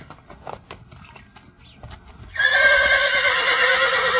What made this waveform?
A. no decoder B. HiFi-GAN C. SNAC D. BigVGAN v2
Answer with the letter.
A